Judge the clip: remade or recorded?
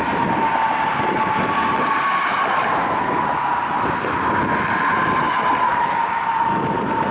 recorded